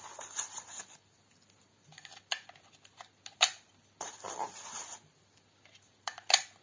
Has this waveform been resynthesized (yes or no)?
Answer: no